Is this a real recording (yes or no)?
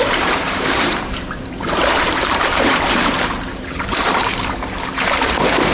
no